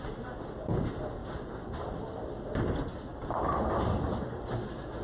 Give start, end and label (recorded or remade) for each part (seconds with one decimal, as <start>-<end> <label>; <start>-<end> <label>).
0.0-5.0 recorded